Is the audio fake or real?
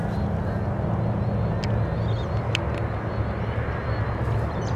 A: real